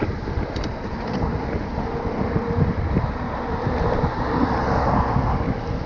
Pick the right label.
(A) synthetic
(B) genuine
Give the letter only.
B